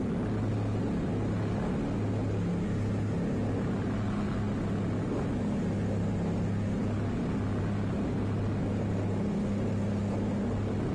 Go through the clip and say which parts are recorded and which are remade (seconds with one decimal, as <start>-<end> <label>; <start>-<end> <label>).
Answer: 0.0-10.9 recorded